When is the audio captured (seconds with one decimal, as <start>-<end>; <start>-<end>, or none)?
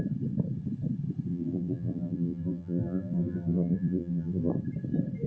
0.0-1.3; 4.5-5.3